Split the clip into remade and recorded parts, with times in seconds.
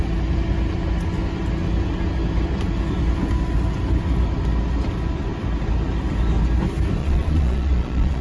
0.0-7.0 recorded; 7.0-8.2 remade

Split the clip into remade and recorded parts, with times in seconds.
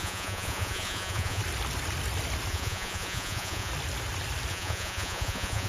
0.0-1.4 remade; 1.4-2.5 recorded; 2.5-3.7 remade; 3.7-4.5 recorded; 4.5-5.7 remade